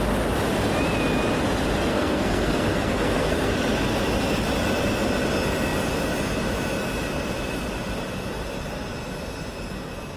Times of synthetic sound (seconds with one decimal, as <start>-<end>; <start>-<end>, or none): 1.9-3.5